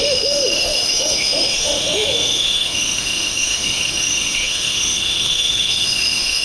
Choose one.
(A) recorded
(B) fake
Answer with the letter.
B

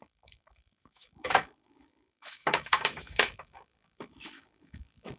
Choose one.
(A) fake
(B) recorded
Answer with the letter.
A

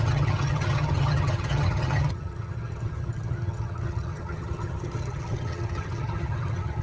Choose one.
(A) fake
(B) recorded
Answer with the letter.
A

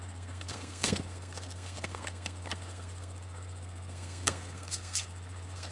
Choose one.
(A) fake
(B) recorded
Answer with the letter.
A